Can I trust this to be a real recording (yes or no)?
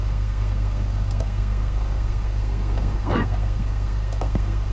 no